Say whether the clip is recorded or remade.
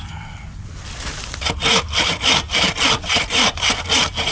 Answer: recorded